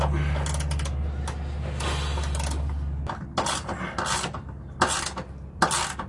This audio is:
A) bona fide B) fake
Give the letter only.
A